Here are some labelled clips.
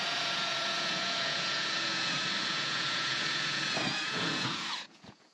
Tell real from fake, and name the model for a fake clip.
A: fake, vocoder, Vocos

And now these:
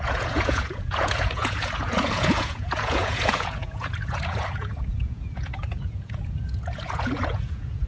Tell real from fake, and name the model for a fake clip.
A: fake, vocoder, Vocos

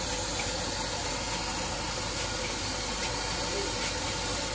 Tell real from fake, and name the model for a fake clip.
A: real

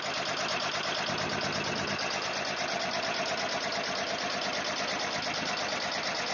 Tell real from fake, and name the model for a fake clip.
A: real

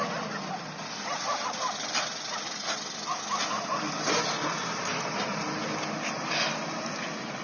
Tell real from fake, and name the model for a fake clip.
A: real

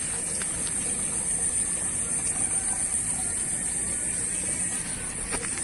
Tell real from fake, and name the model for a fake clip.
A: fake, vocoder, BigVGAN v2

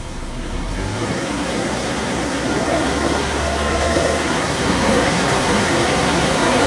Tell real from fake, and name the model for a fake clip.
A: fake, codec, SNAC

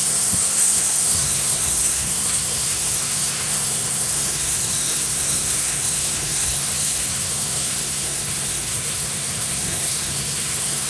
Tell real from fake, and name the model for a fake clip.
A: fake, codec, SNAC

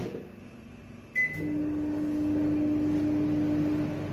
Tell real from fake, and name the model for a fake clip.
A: real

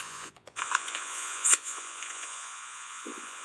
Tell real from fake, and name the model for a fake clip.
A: fake, vocoder, Vocos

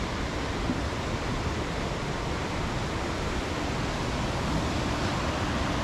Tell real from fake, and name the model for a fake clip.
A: real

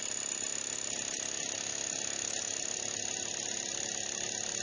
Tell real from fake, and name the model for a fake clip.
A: real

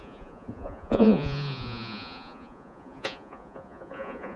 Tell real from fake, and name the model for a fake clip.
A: fake, vocoder, Vocos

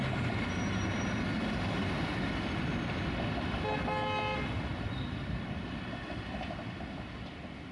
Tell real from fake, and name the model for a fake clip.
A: real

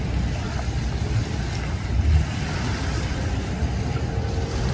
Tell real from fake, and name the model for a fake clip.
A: real